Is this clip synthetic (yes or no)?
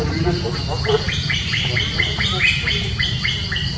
no